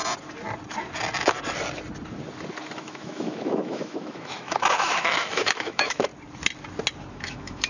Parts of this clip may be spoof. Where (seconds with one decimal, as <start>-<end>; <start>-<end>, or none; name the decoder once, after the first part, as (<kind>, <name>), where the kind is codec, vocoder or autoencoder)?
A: 2.8-6.1 (autoencoder, DAC-VAE); 7.1-7.7

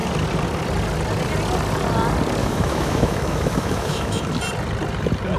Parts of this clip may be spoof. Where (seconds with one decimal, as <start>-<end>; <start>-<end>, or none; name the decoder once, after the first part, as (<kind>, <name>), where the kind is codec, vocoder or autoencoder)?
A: 2.4-4.3 (autoencoder, DAC-VAE)

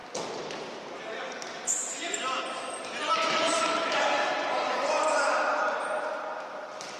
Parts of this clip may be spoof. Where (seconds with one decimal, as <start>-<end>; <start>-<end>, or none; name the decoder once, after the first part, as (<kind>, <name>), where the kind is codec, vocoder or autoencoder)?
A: 1.8-6.0 (vocoder, BigVGAN v2)

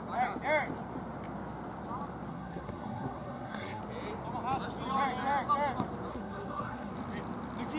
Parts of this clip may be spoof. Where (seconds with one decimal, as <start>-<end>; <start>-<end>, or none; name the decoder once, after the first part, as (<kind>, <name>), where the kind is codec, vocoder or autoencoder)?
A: 2.3-3.8 (codec, SNAC); 6.1-6.9

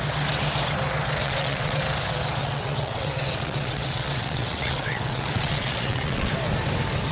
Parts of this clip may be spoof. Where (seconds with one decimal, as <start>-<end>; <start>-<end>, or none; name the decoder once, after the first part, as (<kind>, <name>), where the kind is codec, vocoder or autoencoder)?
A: 1.2-1.8 (vocoder, WaveNeXt); 2.4-6.3

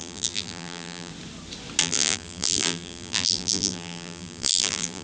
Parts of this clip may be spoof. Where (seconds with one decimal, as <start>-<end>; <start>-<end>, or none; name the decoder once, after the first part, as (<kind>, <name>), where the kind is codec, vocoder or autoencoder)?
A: 0.0-1.1 (vocoder, BigVGAN v2); 1.8-5.0